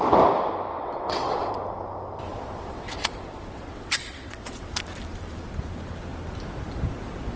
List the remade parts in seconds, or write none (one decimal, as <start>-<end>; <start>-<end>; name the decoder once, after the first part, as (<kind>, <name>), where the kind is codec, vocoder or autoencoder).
0.7-1.5 (vocoder, WaveNeXt); 2.3-4.7